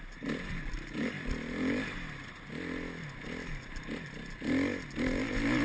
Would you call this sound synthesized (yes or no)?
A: no